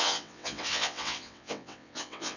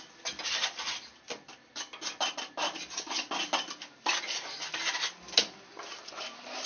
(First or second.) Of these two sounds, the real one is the second